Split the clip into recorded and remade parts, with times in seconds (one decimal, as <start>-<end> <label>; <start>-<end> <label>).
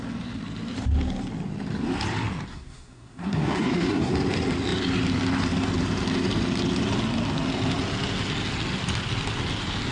0.0-2.5 recorded; 2.5-4.1 remade; 4.1-9.9 recorded